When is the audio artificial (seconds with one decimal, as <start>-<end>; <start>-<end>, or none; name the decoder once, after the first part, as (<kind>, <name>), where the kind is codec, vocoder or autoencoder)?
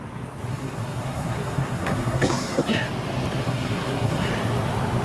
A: 0.5-2.9 (codec, SNAC); 3.4-4.3